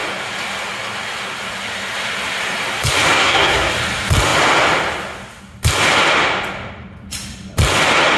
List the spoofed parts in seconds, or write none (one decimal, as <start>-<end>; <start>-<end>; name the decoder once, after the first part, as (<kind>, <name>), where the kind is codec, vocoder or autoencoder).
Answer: 3.1-3.7 (codec, SNAC)